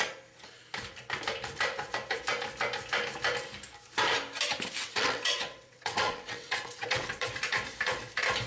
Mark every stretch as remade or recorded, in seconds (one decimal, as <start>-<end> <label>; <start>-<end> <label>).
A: 0.0-4.8 recorded; 4.8-7.3 remade; 7.3-8.5 recorded